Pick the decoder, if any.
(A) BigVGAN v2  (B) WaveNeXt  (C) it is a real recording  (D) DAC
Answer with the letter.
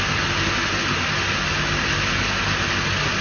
C